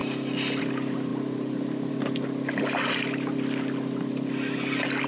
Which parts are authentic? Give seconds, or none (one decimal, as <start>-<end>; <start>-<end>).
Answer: 0.0-1.1; 1.9-5.1